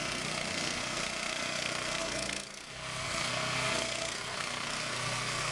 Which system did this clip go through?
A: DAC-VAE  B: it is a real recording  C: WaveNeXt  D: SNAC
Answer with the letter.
D